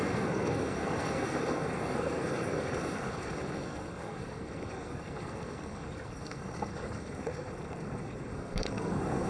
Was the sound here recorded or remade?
remade